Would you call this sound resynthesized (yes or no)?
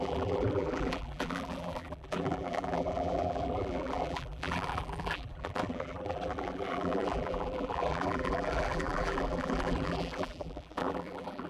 yes